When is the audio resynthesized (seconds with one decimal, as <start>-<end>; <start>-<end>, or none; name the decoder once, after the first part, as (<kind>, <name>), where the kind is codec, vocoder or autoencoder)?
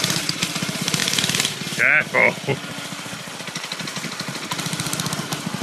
0.0-1.0 (vocoder, BigVGAN v2); 3.4-3.9; 4.6-5.6